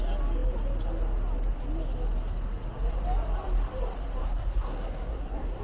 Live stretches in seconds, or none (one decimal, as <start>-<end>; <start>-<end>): 0.0-4.2